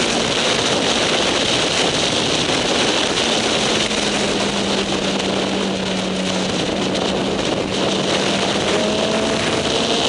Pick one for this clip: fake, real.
real